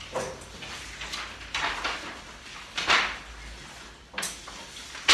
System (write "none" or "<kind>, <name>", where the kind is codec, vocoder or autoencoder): none